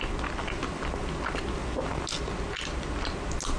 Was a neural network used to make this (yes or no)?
no